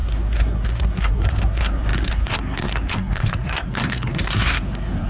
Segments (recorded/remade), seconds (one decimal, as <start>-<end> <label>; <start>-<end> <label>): 0.0-5.1 remade